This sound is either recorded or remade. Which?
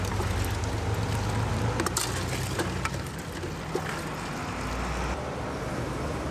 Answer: recorded